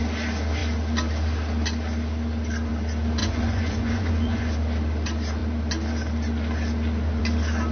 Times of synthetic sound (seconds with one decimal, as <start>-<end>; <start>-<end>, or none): 3.2-4.5